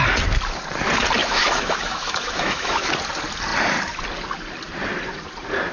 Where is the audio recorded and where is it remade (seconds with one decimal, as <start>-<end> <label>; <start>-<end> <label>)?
0.0-1.2 recorded; 1.2-2.9 remade; 2.9-5.7 recorded